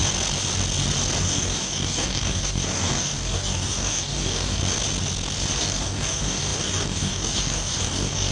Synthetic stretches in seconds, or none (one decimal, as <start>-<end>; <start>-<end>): 1.2-4.6; 5.6-8.3